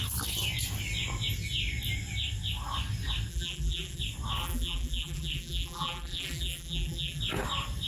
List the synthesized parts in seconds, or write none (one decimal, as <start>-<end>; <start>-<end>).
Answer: 3.3-4.0; 4.4-7.2